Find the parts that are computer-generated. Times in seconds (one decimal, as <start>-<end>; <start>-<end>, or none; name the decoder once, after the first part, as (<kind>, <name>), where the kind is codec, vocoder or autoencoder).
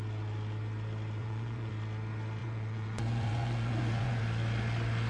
1.2-1.7 (vocoder, Vocos); 2.4-4.2